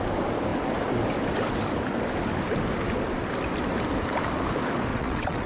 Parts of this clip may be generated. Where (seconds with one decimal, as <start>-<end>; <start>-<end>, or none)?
4.9-5.5